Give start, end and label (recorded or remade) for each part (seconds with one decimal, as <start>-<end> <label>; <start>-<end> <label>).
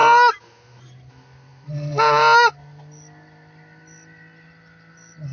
0.0-5.3 recorded